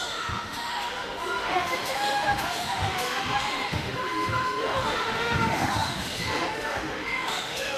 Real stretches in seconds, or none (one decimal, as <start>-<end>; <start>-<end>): none